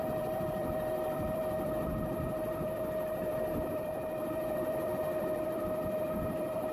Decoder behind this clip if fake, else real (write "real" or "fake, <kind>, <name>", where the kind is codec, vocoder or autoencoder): fake, vocoder, BigVGAN v2